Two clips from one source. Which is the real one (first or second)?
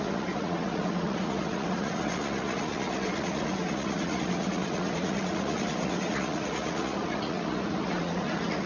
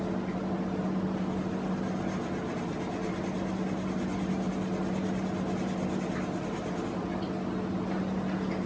second